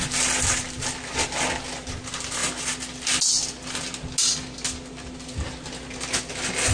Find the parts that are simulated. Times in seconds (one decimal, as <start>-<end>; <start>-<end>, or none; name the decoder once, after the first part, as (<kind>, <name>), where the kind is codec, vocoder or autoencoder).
none